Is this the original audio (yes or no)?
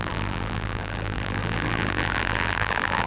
no